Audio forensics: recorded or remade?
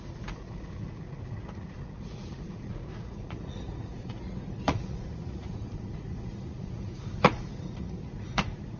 remade